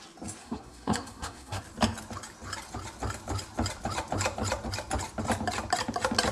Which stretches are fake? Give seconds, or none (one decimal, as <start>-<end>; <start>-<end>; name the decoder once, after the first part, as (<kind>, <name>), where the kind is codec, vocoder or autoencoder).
0.4-1.6 (codec, SNAC)